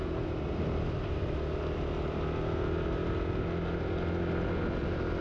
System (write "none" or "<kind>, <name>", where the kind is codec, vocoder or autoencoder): none